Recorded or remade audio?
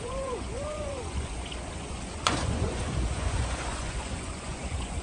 remade